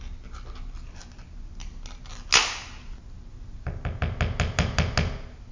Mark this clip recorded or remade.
recorded